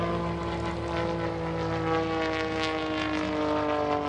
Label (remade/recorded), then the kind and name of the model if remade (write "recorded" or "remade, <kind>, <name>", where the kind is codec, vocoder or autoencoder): recorded